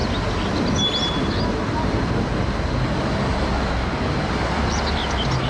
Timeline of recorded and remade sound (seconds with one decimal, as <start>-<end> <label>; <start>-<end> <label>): 0.0-5.5 recorded